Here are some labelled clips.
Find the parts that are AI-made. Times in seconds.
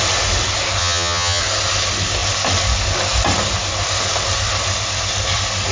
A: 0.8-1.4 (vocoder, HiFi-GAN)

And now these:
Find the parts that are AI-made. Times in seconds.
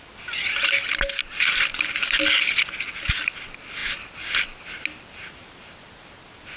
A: none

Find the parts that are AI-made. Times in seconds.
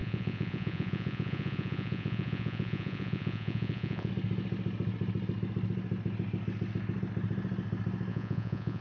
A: 0.0-4.1 (vocoder, Vocos); 8.1-8.8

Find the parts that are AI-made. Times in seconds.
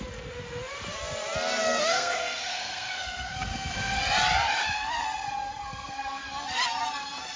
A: 1.6-4.0 (codec, SNAC); 5.0-6.2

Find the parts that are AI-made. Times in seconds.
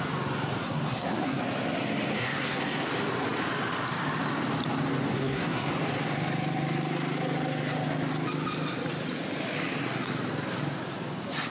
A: 0.6-1.4 (codec, SNAC); 2.1-2.8; 5.1-5.7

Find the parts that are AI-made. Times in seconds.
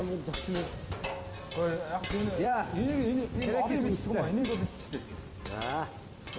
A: 2.0-2.7 (vocoder, BigVGAN v2); 3.7-6.4